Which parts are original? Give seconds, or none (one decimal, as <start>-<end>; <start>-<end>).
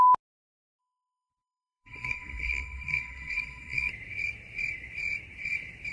0.0-0.8; 3.9-5.9